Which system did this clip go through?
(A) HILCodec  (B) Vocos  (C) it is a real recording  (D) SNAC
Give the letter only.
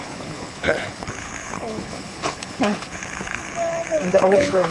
A